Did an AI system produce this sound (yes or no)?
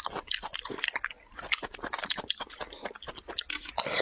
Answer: no